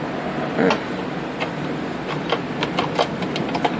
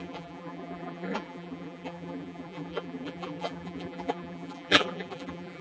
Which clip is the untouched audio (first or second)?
first